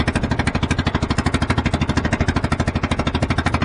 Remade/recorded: recorded